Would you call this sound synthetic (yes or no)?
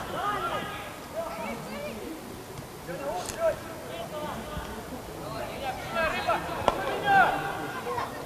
no